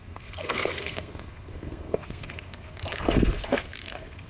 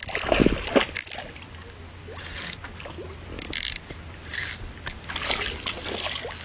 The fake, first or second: first